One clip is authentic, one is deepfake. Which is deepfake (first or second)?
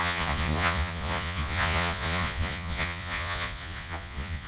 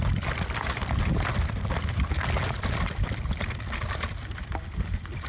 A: first